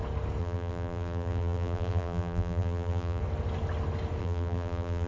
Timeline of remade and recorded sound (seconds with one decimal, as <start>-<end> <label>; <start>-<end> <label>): 0.0-0.4 recorded; 0.4-3.2 remade; 3.2-4.2 recorded; 4.2-5.1 remade